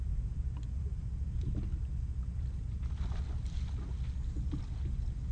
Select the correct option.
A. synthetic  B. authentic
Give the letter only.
B